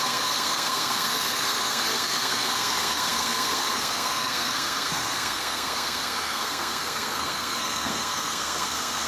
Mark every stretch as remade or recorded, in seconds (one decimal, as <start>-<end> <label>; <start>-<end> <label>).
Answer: 0.0-9.1 remade